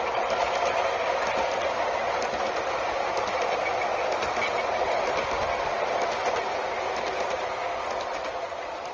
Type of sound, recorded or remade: recorded